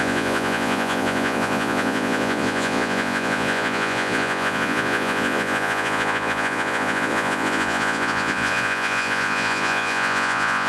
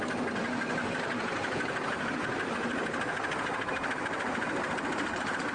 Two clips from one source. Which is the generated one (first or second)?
first